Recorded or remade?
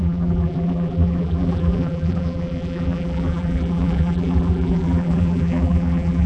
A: remade